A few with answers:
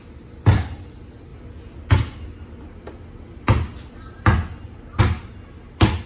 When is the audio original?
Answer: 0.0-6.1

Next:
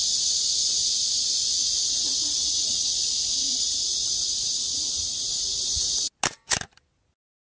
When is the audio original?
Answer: 0.0-1.6; 6.1-7.5

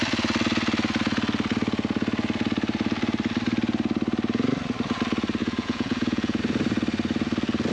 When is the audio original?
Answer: 0.0-5.4; 6.4-7.7

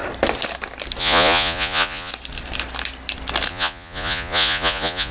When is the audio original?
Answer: 0.0-1.0; 2.1-3.5